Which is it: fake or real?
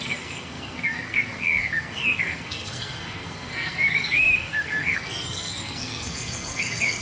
fake